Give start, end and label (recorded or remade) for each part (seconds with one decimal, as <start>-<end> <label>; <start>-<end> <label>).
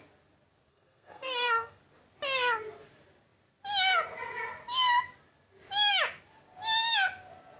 0.0-0.7 recorded; 0.7-1.8 remade; 1.8-7.6 recorded